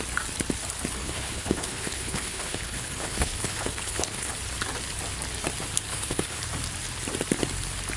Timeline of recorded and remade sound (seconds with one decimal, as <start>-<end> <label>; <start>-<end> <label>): 0.0-1.0 recorded; 1.0-4.3 remade; 4.3-5.9 recorded; 5.9-6.4 remade; 6.4-8.0 recorded